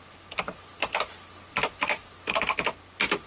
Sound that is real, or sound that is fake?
real